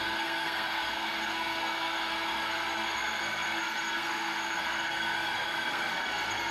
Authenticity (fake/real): fake